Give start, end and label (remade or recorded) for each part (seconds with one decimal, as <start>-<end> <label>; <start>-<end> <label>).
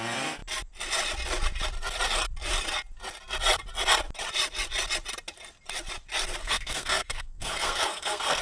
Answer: 0.0-6.4 recorded; 6.4-8.4 remade